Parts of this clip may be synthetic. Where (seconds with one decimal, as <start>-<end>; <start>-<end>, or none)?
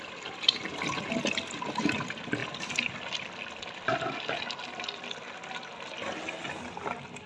none